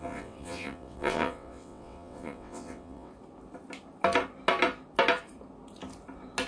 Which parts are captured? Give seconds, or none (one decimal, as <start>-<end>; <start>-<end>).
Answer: 3.1-6.5